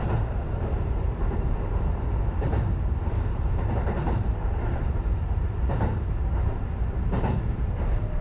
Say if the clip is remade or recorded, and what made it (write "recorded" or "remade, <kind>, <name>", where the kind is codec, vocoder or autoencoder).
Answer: remade, vocoder, BigVGAN v2